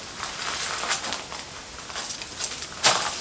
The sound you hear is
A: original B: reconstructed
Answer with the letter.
A